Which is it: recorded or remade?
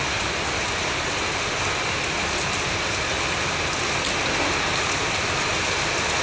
recorded